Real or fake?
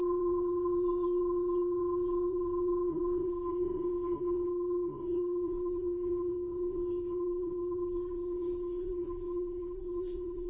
fake